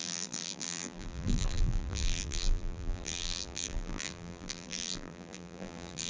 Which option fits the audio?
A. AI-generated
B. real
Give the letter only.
A